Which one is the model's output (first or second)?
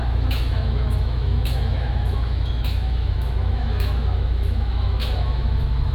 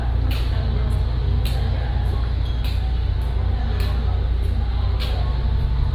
first